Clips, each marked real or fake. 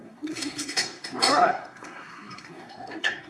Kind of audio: fake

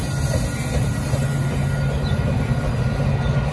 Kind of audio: real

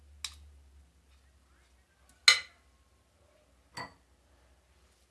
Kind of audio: real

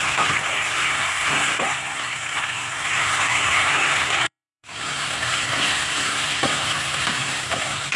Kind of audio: fake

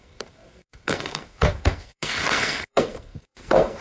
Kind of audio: fake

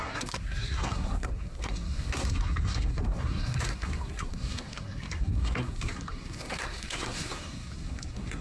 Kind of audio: fake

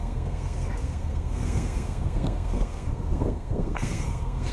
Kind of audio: fake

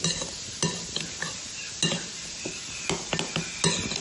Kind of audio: real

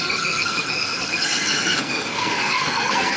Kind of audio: fake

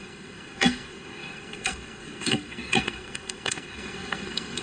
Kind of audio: fake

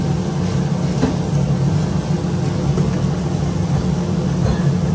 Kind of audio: real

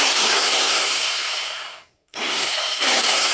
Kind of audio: fake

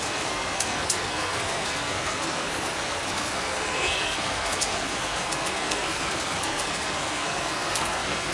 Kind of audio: fake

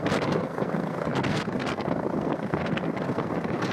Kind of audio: fake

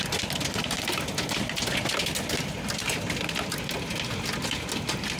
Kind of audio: real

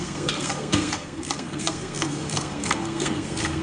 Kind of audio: fake